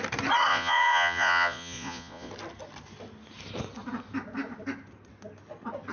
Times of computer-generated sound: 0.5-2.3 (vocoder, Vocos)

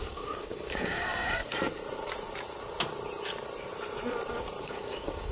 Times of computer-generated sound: 0.0-1.4 (codec, DAC); 4.6-5.3